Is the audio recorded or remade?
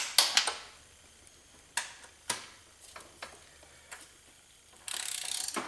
recorded